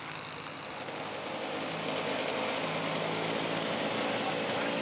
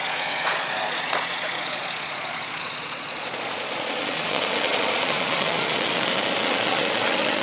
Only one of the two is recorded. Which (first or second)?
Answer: first